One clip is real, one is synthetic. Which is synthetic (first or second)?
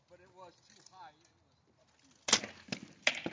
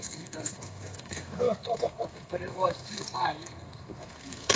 second